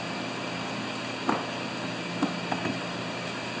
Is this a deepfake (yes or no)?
no